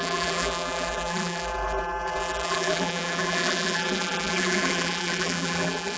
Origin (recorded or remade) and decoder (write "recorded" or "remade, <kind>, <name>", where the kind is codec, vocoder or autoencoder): remade, vocoder, BigVGAN v2